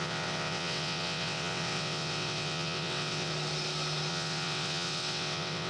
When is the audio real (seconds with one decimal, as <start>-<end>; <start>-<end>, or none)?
3.3-4.1

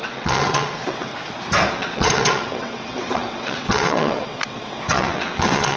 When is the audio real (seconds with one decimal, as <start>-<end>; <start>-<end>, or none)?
1.1-1.7